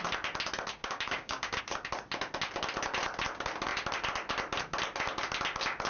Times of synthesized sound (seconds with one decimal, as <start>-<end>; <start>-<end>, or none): 0.8-1.6